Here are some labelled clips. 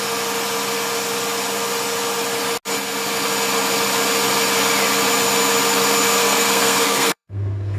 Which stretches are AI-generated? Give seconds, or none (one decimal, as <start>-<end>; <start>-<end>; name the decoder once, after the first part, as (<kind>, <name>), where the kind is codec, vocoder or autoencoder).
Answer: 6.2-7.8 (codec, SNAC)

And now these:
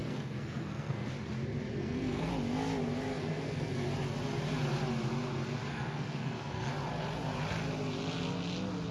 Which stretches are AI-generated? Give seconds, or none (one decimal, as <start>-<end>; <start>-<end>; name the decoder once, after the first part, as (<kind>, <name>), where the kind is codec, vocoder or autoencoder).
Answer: 0.0-1.1 (codec, SNAC); 1.8-2.3; 3.1-3.8; 5.7-6.7

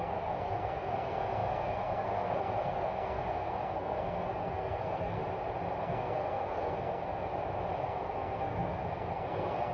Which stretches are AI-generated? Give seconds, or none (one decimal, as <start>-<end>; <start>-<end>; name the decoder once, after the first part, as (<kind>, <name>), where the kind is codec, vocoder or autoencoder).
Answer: 0.0-5.2 (codec, SNAC); 5.8-7.3; 7.8-9.7